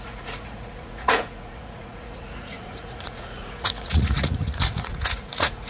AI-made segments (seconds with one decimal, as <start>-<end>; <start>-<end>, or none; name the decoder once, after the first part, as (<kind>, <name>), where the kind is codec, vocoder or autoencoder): 0.0-5.7 (vocoder, Vocos)